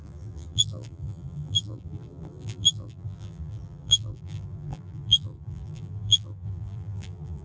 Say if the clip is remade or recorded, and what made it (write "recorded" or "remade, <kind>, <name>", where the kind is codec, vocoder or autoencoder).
remade, vocoder, BigVGAN v2